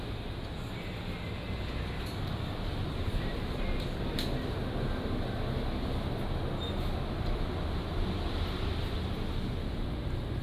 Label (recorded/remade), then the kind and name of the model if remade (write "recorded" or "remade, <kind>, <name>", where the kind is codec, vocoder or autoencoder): recorded